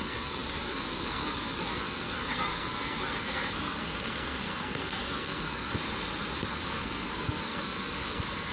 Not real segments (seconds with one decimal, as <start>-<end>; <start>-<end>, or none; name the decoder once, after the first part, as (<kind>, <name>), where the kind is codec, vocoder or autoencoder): 0.0-5.7 (codec, SNAC); 6.5-8.5